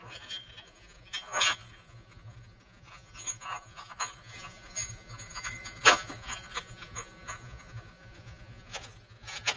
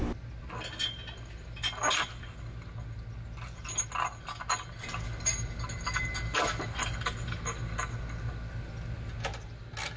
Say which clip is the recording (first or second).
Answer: second